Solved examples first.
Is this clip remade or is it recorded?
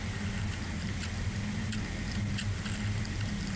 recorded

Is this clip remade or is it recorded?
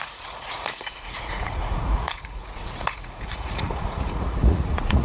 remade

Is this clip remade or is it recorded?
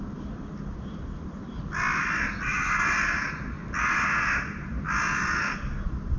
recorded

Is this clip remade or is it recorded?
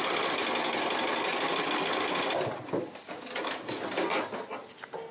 recorded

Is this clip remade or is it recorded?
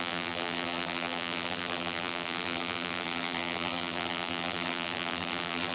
remade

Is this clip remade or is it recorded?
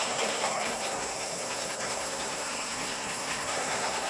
remade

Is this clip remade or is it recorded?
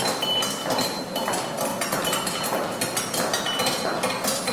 recorded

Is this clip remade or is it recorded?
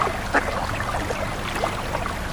recorded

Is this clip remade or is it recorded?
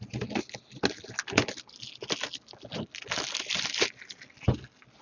recorded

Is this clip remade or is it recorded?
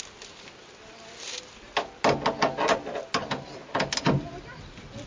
recorded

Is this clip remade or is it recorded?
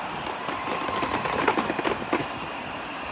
recorded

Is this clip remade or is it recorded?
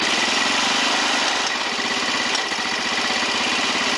recorded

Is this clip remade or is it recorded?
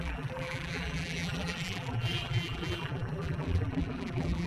remade